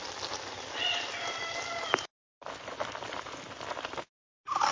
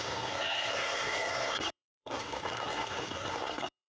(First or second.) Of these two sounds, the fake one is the second